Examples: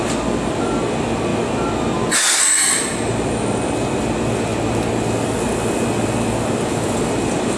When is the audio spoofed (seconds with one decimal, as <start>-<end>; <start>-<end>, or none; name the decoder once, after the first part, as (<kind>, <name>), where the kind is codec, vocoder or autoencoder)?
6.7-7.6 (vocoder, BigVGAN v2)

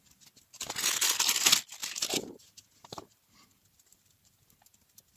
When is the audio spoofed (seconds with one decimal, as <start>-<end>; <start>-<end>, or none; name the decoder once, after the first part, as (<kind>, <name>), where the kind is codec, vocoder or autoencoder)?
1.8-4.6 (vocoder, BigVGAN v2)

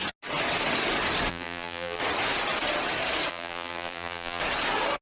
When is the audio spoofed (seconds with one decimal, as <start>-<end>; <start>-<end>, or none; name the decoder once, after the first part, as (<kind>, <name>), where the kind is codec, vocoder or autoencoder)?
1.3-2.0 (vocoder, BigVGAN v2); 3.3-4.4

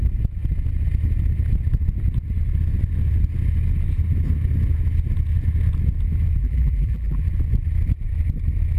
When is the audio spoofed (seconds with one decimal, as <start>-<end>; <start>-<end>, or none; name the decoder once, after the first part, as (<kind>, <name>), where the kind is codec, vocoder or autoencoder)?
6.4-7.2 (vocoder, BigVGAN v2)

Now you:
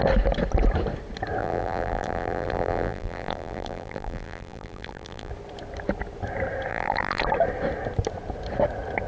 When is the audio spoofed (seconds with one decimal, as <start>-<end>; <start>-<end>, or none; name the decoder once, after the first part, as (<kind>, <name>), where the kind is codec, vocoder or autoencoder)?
1.4-5.3 (vocoder, BigVGAN v2); 6.7-7.2

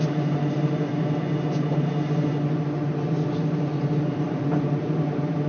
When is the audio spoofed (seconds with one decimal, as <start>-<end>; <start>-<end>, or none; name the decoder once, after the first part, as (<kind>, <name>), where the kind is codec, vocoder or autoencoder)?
0.0-0.9 (vocoder, BigVGAN v2); 4.1-5.5

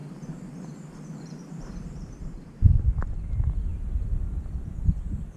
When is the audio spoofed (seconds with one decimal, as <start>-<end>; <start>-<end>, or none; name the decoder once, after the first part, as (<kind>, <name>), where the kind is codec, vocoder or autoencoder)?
0.0-2.7 (vocoder, BigVGAN v2); 3.7-5.0

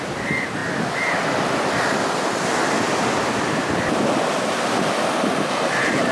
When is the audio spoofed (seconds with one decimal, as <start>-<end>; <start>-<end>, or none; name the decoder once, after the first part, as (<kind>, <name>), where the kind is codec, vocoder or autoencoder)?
0.6-1.6 (vocoder, BigVGAN v2); 3.6-4.3